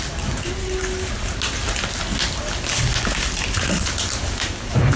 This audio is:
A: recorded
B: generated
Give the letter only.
A